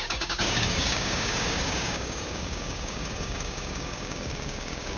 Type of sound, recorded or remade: remade